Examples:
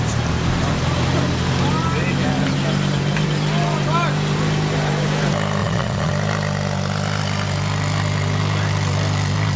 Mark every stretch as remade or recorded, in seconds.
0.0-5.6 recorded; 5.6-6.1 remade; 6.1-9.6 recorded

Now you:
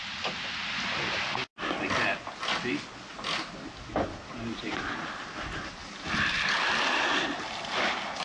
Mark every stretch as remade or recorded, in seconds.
0.0-8.2 recorded

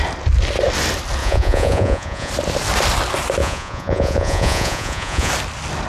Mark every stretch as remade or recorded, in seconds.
0.0-1.2 recorded; 1.2-2.3 remade; 2.3-3.4 recorded; 3.4-5.3 remade; 5.3-5.9 recorded

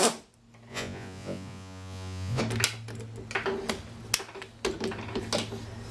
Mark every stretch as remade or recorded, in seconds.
0.0-0.7 recorded; 0.7-2.4 remade; 2.4-5.9 recorded